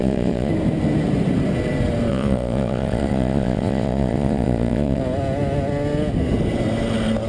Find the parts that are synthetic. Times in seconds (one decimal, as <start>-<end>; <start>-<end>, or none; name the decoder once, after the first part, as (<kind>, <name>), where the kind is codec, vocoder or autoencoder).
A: 0.0-0.5 (vocoder, Vocos); 2.1-5.0